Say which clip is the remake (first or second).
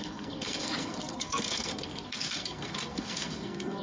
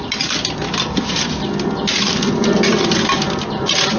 first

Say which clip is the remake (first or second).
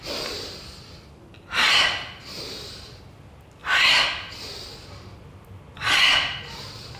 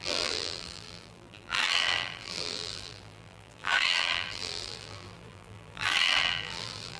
second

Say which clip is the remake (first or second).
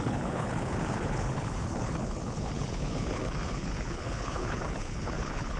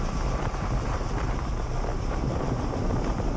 first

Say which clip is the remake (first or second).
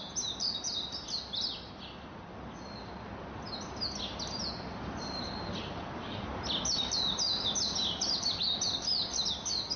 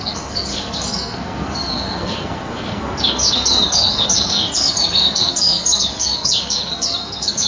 second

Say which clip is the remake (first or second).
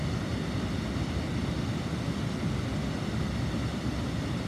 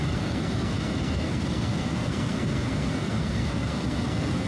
second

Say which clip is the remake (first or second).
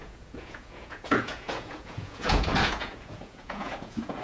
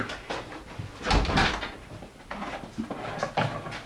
first